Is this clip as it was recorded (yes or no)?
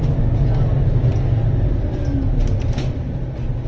yes